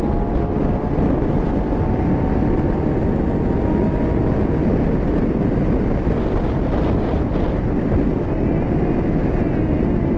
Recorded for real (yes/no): yes